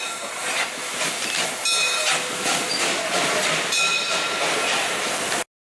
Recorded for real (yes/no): yes